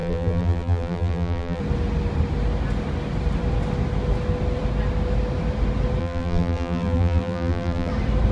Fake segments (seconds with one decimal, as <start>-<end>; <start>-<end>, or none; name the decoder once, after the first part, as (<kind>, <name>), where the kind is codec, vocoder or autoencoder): 0.0-1.6 (vocoder, BigVGAN v2); 6.0-7.9